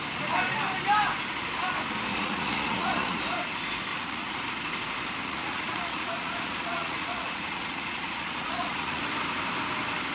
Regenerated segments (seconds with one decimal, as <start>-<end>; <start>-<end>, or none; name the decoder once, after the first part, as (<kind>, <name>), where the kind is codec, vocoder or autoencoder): 2.1-3.2 (vocoder, Vocos); 3.9-4.4; 5.2-9.0